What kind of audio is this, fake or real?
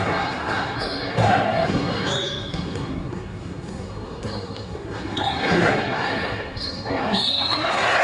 fake